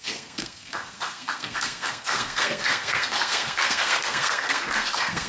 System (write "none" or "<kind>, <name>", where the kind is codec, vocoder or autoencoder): codec, SNAC